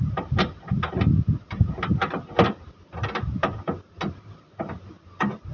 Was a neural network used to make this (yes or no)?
no